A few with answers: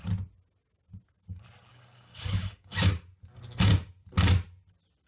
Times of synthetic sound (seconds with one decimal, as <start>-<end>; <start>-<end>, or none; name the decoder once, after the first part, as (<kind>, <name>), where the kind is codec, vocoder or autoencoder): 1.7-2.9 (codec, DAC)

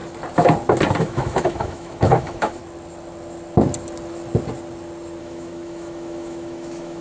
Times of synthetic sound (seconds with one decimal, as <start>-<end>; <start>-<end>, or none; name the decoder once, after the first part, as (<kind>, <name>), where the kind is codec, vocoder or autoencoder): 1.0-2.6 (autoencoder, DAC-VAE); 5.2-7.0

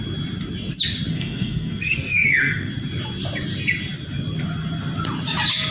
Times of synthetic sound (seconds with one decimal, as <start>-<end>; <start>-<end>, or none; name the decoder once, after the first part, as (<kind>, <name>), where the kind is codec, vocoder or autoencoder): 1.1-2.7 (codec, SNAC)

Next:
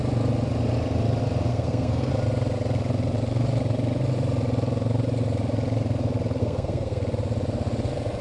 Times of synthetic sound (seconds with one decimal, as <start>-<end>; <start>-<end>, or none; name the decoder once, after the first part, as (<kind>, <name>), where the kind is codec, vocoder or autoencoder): 1.5-2.1 (codec, SNAC); 6.4-7.0

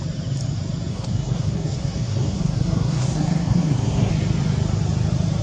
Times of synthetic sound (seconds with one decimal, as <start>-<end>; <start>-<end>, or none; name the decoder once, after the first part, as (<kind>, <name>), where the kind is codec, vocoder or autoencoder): 0.9-4.1 (codec, SNAC)

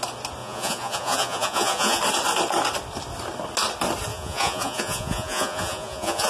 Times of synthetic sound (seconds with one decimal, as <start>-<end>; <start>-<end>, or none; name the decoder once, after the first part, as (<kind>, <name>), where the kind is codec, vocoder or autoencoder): 0.4-2.0 (vocoder, Vocos); 4.1-6.3

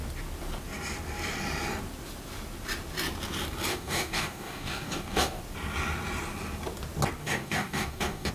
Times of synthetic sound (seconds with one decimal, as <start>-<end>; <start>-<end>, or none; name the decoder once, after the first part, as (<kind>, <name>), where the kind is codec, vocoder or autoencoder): 3.7-5.4 (codec, DAC); 7.2-8.3